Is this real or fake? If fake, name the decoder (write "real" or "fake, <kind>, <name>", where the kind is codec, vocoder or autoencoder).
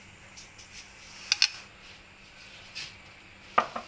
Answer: real